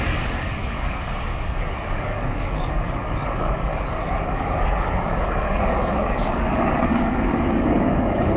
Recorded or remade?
remade